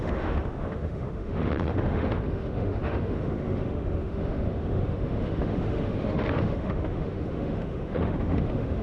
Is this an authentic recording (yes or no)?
no